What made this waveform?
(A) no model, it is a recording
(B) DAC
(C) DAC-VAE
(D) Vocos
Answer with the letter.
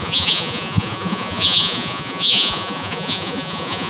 D